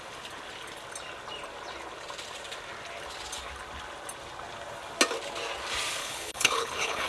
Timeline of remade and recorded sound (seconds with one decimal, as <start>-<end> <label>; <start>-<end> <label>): 0.0-6.0 recorded; 6.0-7.1 remade